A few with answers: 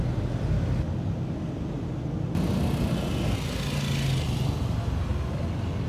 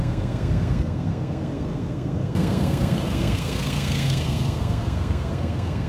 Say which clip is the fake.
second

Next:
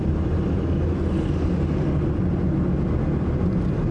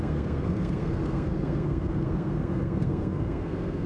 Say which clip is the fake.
second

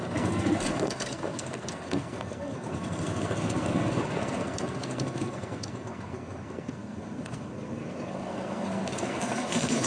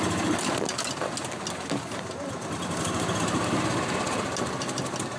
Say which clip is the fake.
first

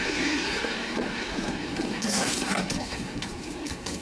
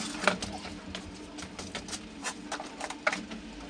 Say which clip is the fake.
first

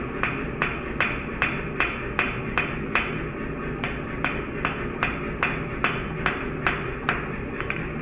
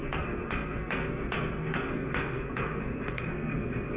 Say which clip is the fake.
second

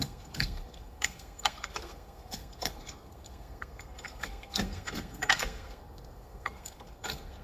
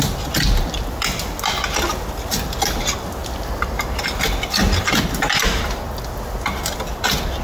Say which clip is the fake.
first